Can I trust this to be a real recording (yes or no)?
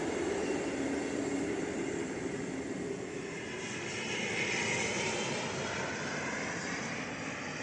yes